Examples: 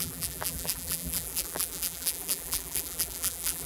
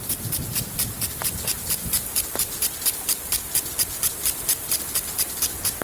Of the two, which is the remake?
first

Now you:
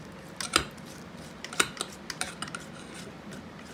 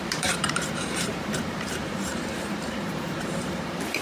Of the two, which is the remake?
second